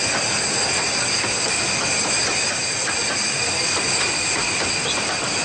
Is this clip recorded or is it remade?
recorded